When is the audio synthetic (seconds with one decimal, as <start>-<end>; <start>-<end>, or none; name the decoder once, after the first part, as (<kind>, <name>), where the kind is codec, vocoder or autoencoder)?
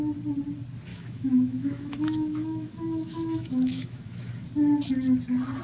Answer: 0.9-4.3 (autoencoder, DAC-VAE)